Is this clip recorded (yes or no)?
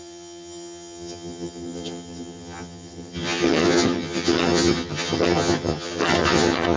no